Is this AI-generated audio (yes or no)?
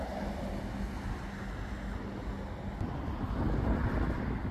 no